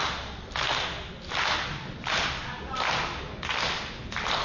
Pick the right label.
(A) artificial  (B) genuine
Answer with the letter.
B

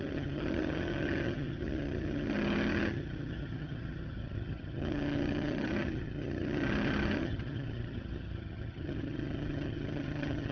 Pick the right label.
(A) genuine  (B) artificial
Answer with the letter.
B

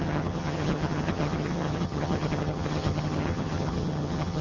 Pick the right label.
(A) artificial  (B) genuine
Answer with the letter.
A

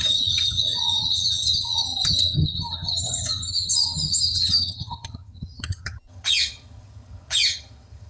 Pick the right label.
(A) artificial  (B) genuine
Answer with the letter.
A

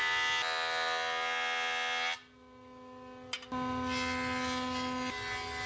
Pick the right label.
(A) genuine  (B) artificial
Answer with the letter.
A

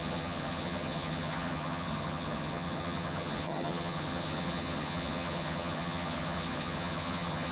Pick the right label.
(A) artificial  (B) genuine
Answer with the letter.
A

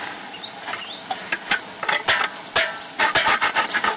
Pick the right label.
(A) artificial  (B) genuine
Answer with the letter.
B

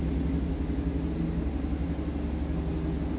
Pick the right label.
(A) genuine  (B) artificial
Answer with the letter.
A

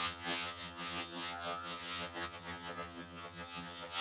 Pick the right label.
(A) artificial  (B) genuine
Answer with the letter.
A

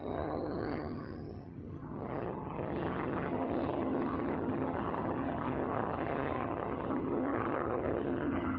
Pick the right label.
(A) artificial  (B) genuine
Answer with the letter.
A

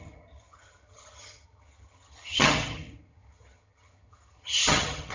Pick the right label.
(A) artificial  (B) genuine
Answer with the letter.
A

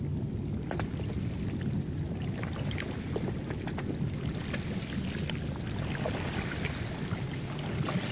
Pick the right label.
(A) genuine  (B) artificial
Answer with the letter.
A